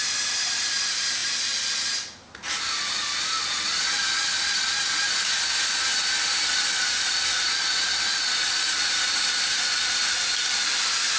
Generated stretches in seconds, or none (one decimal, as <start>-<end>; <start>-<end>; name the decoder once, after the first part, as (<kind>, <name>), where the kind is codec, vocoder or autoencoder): none